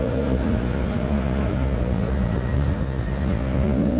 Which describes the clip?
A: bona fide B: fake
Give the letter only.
B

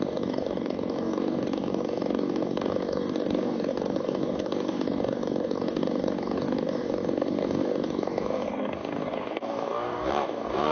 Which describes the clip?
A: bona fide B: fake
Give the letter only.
B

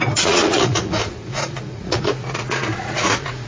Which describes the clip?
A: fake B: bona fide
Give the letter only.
A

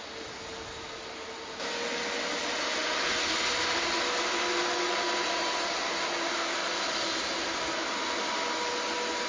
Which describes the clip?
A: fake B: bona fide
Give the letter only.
B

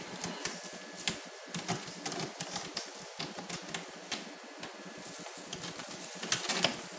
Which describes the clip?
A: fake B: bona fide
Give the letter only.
B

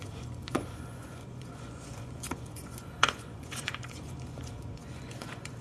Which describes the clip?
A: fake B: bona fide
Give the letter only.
A